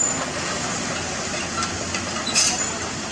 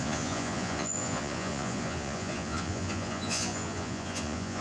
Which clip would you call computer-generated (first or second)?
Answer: second